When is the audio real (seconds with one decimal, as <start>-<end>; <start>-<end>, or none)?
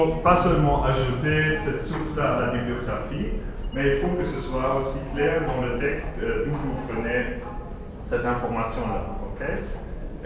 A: 0.0-10.3